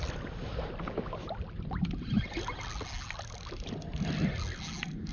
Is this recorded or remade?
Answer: recorded